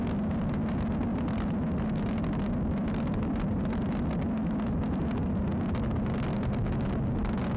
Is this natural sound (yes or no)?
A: yes